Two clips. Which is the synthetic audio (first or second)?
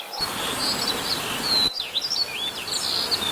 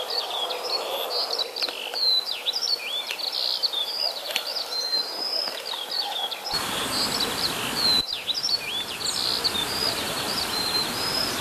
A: second